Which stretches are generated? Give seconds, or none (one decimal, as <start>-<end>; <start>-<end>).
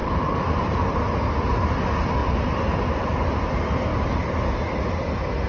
0.0-0.8; 3.9-4.7